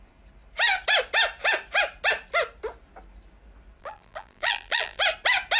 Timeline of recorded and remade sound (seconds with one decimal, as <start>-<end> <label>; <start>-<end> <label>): 0.0-3.8 recorded; 3.8-5.0 remade; 5.0-5.6 recorded